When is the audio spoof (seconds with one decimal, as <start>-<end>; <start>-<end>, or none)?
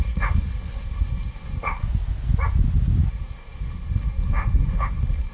0.0-1.8; 3.1-5.3